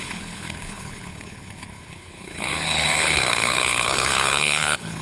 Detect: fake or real fake